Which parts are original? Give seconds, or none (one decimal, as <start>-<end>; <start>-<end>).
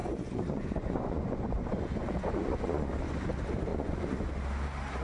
2.9-3.7; 4.3-5.0